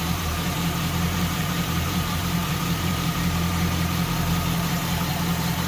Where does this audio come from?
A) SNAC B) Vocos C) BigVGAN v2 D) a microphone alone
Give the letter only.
C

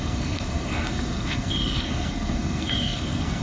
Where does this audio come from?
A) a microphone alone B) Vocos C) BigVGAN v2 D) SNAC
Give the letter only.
D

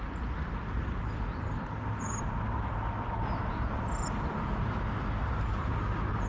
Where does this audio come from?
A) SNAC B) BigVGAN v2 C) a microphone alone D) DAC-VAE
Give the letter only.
C